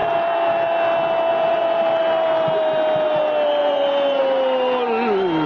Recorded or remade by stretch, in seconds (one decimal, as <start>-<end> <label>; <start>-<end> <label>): 0.0-1.3 recorded; 1.3-1.8 remade; 1.8-3.6 recorded; 3.6-4.2 remade; 4.2-5.5 recorded